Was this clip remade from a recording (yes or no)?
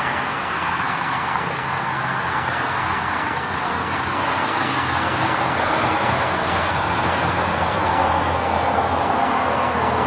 yes